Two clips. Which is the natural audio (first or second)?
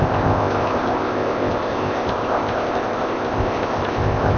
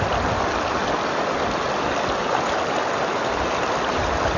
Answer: second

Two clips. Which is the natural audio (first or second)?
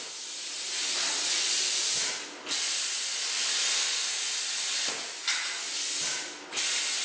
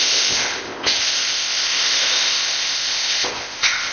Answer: first